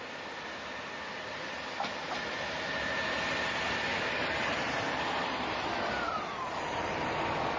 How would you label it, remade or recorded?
recorded